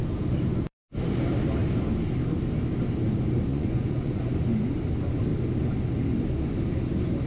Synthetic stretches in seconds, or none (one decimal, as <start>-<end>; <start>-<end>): 3.5-4.2